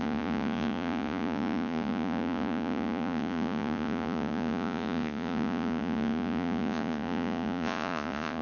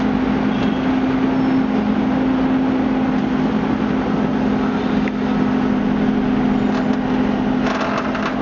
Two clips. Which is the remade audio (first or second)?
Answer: first